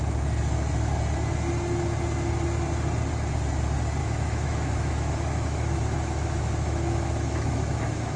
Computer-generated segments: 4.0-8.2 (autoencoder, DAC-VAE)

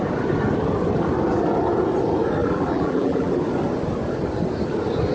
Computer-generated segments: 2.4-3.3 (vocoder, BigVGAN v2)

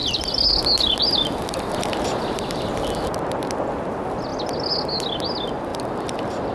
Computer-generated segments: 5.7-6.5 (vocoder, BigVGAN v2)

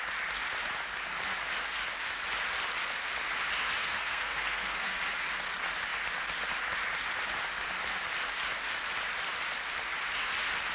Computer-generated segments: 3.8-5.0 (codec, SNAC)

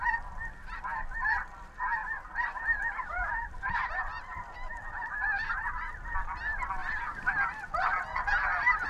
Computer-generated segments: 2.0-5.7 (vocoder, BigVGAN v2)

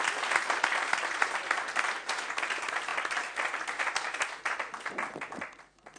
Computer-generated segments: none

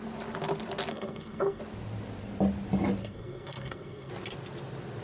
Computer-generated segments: 0.9-1.6 (codec, SNAC); 3.0-4.1

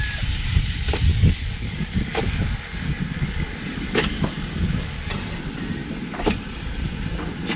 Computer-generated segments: 1.1-5.1 (codec, DAC)